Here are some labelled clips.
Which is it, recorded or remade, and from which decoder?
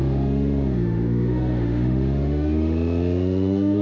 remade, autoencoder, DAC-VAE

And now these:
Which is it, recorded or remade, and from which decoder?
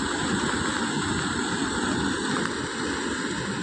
recorded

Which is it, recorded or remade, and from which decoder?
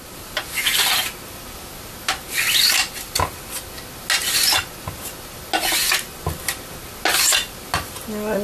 recorded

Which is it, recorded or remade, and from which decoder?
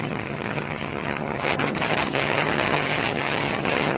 remade, vocoder, HiFi-GAN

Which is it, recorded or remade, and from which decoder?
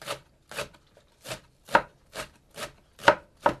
recorded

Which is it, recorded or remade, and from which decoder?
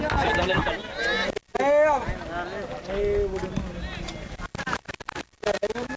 recorded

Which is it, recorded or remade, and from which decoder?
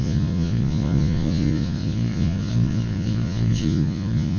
remade, vocoder, Vocos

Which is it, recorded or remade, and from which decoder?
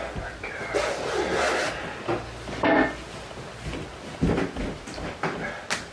recorded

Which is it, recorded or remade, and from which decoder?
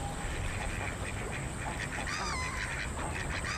recorded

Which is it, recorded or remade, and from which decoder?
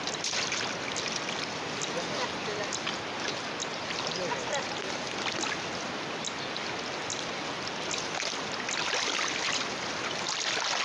recorded